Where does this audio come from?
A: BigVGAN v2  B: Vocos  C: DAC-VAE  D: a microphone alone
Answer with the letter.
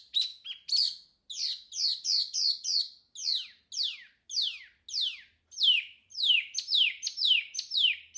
D